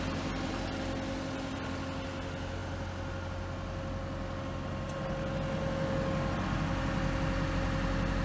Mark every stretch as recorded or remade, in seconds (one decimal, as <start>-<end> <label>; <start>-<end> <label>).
0.0-8.2 recorded